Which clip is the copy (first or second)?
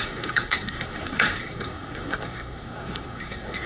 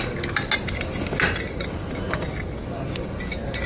first